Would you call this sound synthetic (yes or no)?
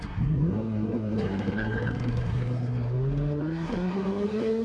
yes